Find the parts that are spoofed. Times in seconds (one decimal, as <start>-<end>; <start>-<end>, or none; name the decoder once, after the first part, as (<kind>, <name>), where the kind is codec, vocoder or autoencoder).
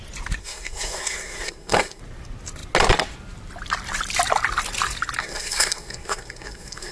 0.4-2.0 (codec, SNAC); 5.2-6.9